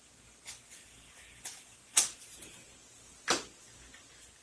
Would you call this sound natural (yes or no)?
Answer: yes